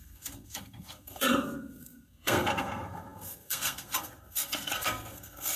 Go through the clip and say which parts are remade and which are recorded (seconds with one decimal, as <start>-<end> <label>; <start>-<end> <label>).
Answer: 0.0-5.6 remade